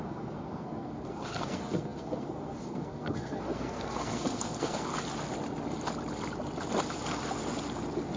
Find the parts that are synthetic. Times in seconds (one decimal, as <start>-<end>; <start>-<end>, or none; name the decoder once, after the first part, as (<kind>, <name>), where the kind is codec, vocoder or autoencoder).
0.0-4.9 (codec, SNAC)